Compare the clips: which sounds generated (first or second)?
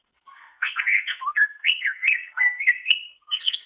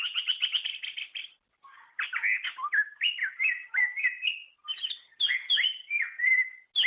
first